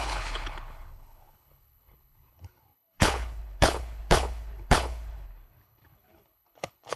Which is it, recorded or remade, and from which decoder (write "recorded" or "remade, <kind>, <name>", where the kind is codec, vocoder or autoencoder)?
remade, codec, HILCodec